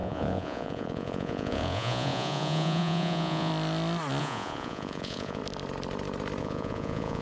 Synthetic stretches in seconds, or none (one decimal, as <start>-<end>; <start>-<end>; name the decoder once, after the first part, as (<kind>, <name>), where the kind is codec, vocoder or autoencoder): 0.0-3.5 (vocoder, Vocos); 4.2-5.4; 6.4-7.2

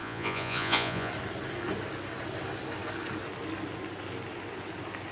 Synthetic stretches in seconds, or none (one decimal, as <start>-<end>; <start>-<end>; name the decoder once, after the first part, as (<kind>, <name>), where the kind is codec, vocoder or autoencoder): 0.0-1.1 (vocoder, Vocos)

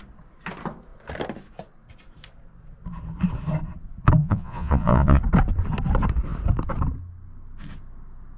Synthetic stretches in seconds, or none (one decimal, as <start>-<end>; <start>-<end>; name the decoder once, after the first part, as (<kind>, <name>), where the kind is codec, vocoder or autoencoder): 4.2-5.2 (vocoder, Vocos)

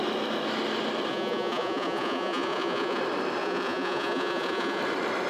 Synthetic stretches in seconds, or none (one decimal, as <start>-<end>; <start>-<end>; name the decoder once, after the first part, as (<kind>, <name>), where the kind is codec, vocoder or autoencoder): 1.1-3.0 (vocoder, Vocos); 3.4-4.8